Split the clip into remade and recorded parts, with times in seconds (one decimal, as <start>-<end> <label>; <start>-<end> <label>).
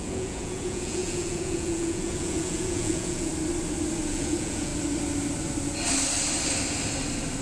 0.0-3.3 remade; 3.3-4.1 recorded; 4.1-4.7 remade; 4.7-7.4 recorded